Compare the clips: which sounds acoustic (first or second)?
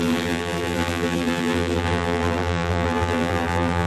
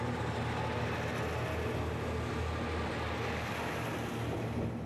second